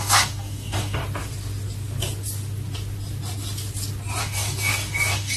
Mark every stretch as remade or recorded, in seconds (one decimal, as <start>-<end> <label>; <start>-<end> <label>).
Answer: 0.0-1.0 remade; 1.0-4.2 recorded; 4.2-5.4 remade